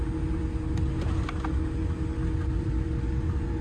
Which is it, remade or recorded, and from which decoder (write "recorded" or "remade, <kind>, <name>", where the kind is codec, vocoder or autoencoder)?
recorded